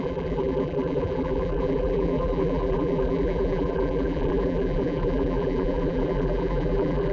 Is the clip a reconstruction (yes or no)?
yes